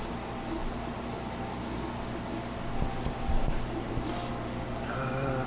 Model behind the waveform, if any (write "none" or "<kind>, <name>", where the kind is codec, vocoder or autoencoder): none